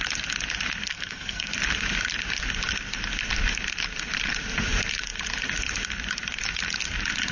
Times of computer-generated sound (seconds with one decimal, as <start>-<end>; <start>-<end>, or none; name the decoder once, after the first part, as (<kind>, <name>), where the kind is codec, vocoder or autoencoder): 0.9-1.5 (codec, SNAC)

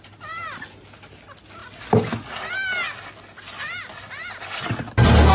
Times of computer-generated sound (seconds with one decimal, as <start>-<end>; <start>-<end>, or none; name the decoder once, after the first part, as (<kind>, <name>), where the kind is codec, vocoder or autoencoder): none

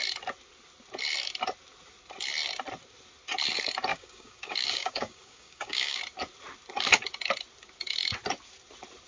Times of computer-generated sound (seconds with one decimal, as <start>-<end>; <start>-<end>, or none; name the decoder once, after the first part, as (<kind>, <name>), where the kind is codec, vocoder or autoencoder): 3.9-6.0 (codec, DAC)

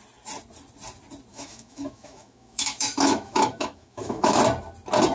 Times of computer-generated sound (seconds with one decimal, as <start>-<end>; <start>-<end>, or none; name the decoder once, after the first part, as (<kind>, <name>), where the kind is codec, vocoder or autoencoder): 1.3-4.4 (autoencoder, DAC-VAE)

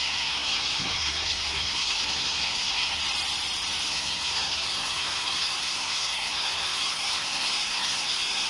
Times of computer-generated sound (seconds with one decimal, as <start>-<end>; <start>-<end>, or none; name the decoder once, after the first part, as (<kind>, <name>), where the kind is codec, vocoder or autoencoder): 0.0-3.0 (codec, SNAC); 3.8-8.5

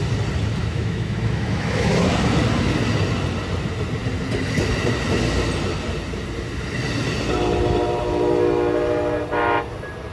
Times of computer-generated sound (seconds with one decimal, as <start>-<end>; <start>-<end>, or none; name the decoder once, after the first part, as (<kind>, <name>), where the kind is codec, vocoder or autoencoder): 0.6-1.9 (autoencoder, DAC-VAE)

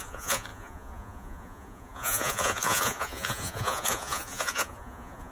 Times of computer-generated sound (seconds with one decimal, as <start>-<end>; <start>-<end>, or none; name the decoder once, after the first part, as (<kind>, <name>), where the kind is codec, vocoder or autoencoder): 0.0-5.3 (vocoder, Vocos)

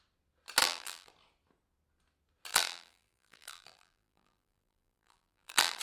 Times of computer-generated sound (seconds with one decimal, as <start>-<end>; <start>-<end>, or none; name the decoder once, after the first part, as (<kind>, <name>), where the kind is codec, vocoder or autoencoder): 0.6-1.1 (vocoder, BigVGAN v2); 2.5-5.8